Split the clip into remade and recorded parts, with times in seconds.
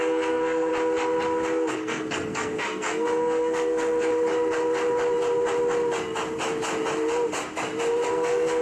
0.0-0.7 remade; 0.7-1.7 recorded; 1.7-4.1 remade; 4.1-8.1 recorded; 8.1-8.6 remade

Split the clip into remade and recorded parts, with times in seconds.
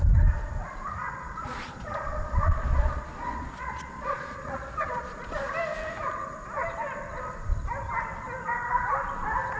0.0-1.0 recorded; 1.0-5.5 remade; 5.5-9.6 recorded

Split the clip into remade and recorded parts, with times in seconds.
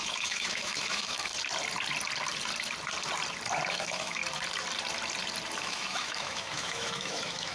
0.0-1.3 remade; 1.3-3.7 recorded; 3.7-4.2 remade; 4.2-5.6 recorded; 5.6-7.5 remade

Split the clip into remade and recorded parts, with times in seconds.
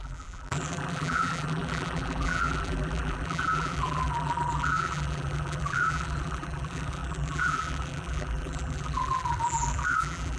0.0-10.4 remade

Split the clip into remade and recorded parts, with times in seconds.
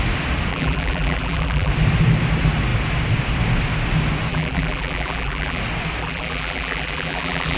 0.0-0.5 recorded; 0.5-1.7 remade; 1.7-4.3 recorded; 4.3-5.6 remade; 5.6-6.0 recorded; 6.0-7.6 remade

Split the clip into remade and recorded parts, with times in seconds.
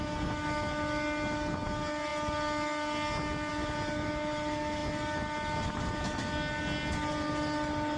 0.0-8.0 recorded